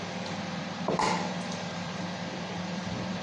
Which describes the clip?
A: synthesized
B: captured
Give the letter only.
A